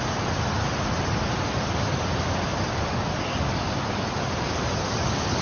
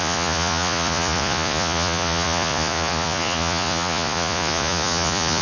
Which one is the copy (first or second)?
second